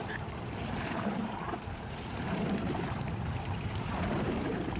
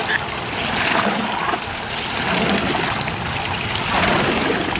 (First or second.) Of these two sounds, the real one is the second